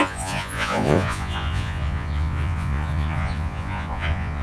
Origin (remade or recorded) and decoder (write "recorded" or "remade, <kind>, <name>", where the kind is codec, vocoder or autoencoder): remade, vocoder, Vocos